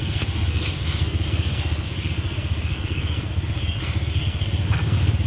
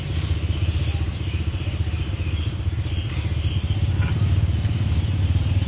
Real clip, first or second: second